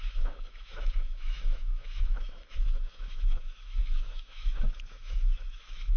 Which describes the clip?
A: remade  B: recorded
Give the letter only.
A